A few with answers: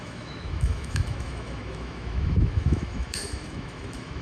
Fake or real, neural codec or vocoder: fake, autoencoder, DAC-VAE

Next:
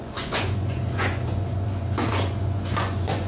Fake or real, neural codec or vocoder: fake, vocoder, Vocos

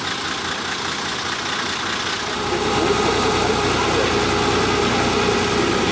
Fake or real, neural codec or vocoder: real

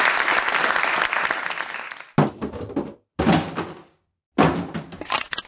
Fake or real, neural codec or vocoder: real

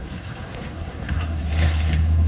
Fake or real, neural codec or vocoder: fake, codec, SNAC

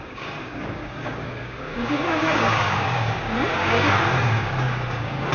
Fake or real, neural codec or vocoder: fake, codec, DAC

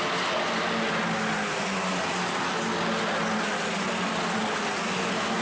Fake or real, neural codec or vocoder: real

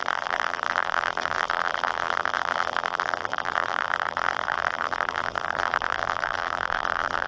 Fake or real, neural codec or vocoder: fake, vocoder, BigVGAN v2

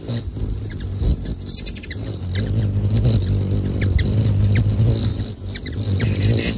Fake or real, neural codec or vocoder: real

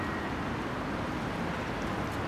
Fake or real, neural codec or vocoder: real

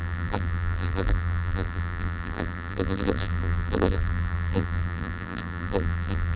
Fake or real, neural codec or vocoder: fake, vocoder, BigVGAN v2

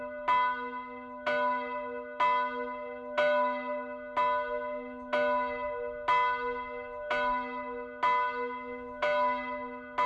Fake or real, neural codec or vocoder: real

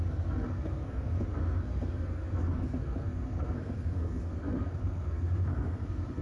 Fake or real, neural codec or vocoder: fake, codec, SNAC